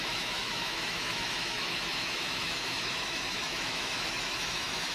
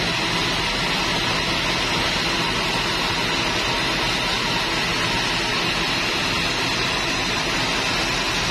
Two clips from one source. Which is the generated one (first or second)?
first